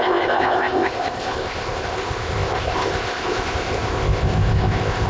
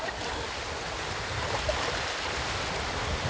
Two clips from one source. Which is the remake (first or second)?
first